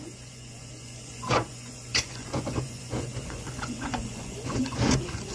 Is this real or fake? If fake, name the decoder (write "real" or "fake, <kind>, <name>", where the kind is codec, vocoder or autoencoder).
fake, vocoder, Vocos